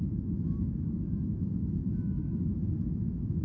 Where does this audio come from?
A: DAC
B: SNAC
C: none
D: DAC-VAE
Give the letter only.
D